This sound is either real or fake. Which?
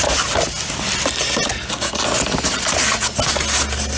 real